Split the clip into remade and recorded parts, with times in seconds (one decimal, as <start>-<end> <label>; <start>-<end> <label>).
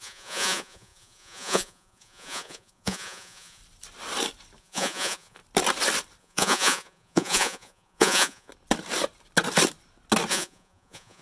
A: 0.0-3.6 remade; 3.6-4.6 recorded; 4.6-5.4 remade; 5.4-6.2 recorded; 6.2-8.5 remade; 8.5-10.3 recorded; 10.3-11.2 remade